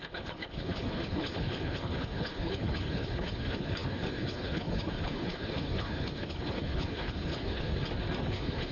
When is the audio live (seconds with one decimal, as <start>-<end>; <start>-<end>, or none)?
7.7-8.2